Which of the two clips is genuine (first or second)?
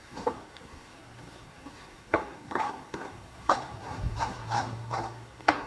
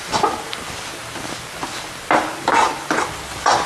second